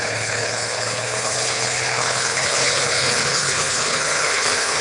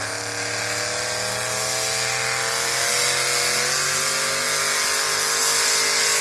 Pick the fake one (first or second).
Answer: first